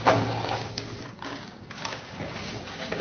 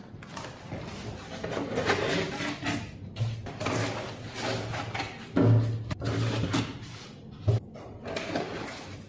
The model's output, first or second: first